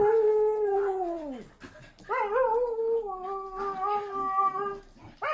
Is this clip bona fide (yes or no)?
yes